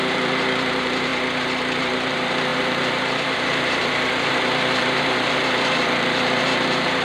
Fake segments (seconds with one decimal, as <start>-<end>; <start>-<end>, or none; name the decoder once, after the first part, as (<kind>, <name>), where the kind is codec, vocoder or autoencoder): 0.0-1.1 (vocoder, BigVGAN v2); 1.8-7.0